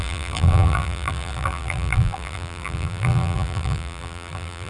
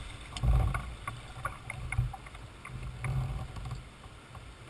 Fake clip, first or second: first